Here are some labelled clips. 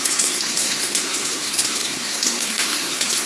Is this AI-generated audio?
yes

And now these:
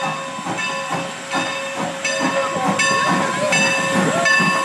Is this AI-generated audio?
no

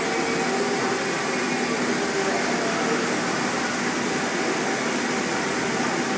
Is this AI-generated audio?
no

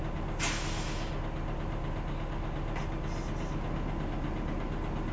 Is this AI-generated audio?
no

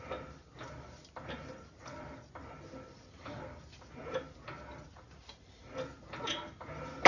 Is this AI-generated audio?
no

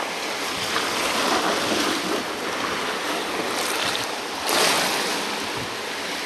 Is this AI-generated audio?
no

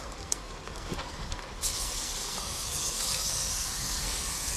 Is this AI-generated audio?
yes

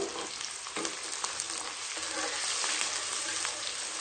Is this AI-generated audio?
no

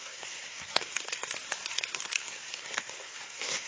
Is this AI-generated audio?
yes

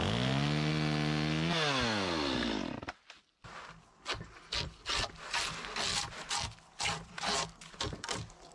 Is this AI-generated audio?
no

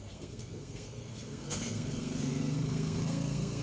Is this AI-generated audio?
yes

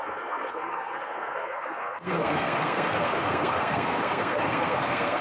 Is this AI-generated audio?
yes